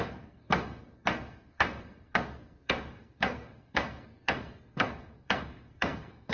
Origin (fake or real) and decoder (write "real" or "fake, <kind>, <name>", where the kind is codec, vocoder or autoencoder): fake, codec, SNAC